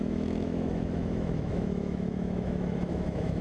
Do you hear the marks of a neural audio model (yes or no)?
yes